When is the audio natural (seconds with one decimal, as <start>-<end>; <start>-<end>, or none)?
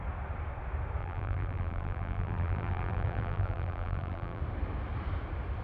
0.0-1.0; 4.4-5.6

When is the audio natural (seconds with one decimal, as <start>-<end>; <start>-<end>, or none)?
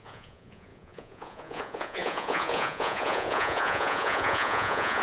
none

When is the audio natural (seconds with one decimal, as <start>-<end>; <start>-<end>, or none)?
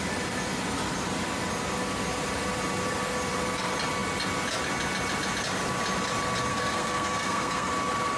0.0-6.5; 7.7-8.2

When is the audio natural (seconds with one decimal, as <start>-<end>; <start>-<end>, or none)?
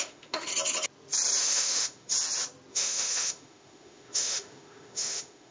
0.5-1.4; 2.1-2.7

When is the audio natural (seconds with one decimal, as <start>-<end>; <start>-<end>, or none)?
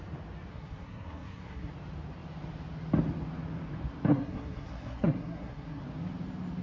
0.0-0.5; 1.7-4.1; 5.8-6.6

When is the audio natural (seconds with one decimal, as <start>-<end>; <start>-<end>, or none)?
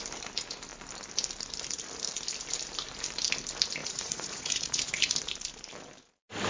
0.0-3.8; 5.2-6.5